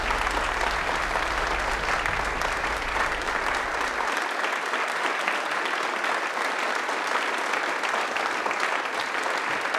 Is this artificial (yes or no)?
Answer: no